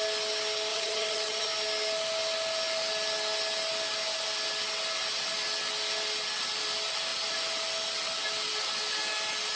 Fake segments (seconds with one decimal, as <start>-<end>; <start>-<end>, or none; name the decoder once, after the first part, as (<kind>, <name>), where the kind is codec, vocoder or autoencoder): 0.7-1.5 (vocoder, HiFi-GAN)